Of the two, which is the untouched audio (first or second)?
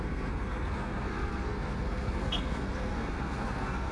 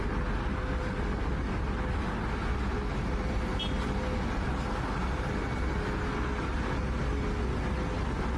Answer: second